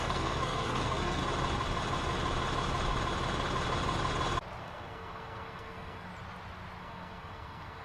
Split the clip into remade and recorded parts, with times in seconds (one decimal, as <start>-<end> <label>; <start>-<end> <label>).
0.0-1.2 remade; 1.2-4.6 recorded; 4.6-6.1 remade; 6.1-6.8 recorded; 6.8-7.8 remade